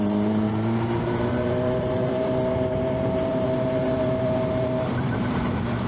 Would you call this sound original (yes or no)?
no